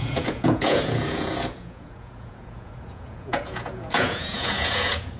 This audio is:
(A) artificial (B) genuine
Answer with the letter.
A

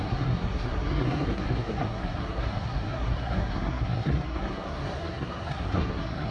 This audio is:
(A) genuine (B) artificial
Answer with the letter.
B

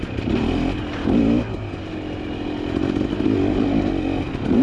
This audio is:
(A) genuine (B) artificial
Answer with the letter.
A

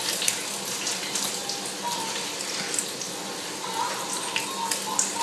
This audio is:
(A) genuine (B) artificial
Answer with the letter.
A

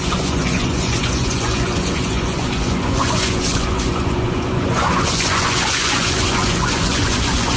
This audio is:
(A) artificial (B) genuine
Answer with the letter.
A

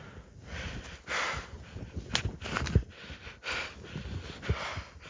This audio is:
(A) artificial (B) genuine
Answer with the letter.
B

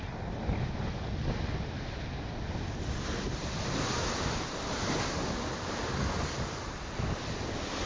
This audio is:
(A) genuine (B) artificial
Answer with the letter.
A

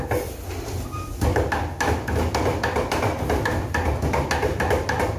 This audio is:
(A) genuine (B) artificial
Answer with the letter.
A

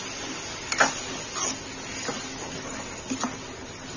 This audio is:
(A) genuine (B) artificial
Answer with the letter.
A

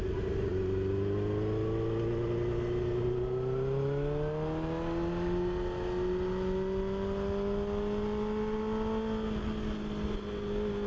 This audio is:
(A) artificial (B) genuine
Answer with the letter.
B